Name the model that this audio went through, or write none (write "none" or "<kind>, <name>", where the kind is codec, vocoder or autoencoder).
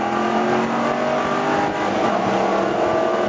none